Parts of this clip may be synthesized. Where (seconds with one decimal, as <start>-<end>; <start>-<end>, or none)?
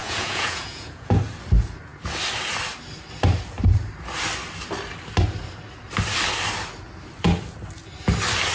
0.0-1.2